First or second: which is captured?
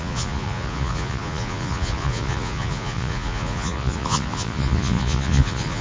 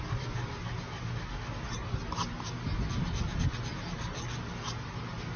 second